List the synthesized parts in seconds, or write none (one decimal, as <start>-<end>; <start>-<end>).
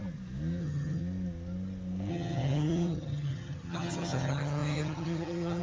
0.6-1.0; 2.1-5.6